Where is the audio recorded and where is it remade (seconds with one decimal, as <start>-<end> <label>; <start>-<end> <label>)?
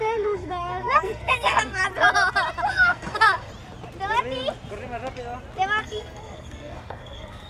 0.0-1.8 remade; 1.8-2.7 recorded; 2.7-3.5 remade; 3.5-5.8 recorded; 5.8-7.5 remade